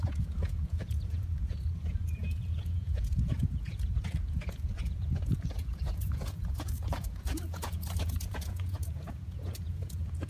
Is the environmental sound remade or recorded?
remade